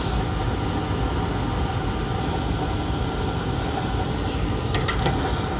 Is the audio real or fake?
real